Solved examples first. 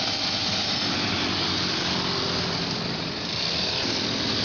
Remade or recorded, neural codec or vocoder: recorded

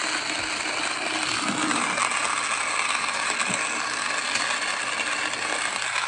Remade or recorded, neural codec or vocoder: recorded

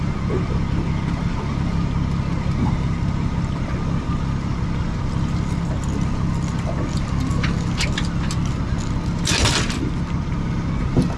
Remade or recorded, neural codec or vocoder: recorded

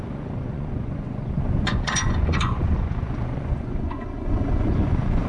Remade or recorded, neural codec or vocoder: remade, vocoder, Vocos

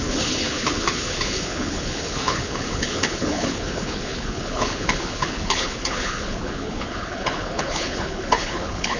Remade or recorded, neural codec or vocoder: remade, codec, HILCodec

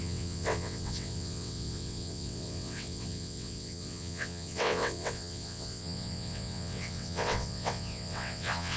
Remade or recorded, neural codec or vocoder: remade, vocoder, WaveNeXt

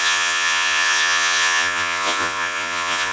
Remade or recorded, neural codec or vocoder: remade, vocoder, Vocos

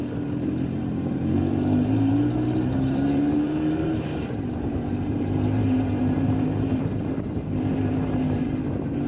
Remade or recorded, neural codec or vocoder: remade, vocoder, BigVGAN v2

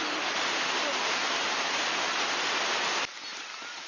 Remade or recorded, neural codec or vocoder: recorded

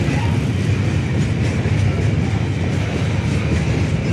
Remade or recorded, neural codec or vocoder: recorded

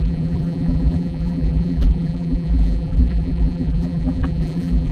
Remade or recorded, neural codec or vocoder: remade, vocoder, BigVGAN v2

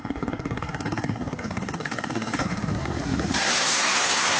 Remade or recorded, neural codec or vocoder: remade, codec, SNAC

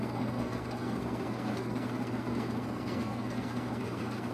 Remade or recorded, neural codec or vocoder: remade, codec, SNAC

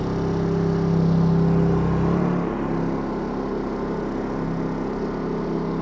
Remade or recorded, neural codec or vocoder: recorded